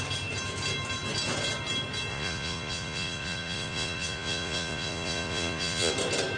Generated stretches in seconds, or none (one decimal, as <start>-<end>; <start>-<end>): 2.1-5.9